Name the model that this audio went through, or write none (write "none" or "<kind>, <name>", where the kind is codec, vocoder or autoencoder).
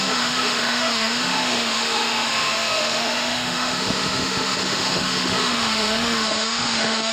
autoencoder, DAC-VAE